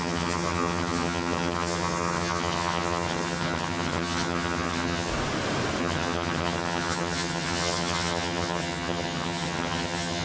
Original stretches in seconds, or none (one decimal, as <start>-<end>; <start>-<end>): 5.1-5.8